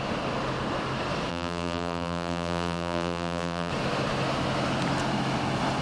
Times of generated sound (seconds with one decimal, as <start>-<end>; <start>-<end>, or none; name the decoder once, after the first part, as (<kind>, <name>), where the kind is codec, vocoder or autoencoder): 1.3-3.7 (vocoder, BigVGAN v2)